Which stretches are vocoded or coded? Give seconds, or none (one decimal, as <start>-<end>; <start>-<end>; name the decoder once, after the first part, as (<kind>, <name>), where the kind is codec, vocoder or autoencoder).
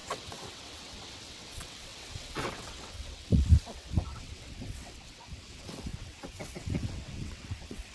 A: 0.0-7.9 (vocoder, WaveNeXt)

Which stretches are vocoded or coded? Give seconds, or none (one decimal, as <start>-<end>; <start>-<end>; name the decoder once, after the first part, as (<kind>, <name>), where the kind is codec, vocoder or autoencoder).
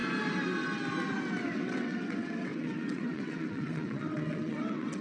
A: 1.5-5.0 (vocoder, WaveNeXt)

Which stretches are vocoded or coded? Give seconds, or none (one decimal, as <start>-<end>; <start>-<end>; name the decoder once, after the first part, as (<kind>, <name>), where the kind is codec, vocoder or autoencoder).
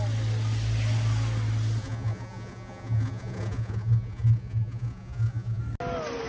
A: 1.8-5.6 (vocoder, Vocos)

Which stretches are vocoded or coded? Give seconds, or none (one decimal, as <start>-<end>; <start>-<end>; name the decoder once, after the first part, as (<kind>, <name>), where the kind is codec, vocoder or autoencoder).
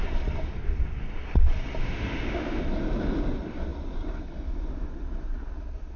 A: 1.8-2.6 (autoencoder, DAC-VAE)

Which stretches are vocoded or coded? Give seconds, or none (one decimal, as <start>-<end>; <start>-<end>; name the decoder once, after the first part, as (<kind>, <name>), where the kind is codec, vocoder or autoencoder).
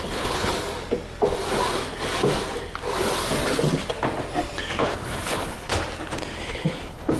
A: 0.0-0.5 (codec, HILCodec); 4.8-5.7; 6.5-7.2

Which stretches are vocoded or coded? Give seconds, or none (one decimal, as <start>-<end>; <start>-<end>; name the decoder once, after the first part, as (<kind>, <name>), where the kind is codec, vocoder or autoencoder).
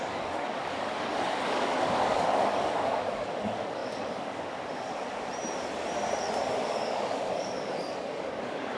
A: 0.0-5.3 (codec, DAC); 6.4-8.8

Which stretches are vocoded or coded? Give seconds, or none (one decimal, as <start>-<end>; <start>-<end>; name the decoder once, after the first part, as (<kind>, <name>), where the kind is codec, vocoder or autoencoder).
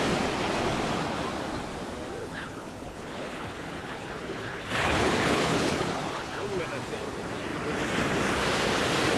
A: 2.2-6.6 (codec, HILCodec)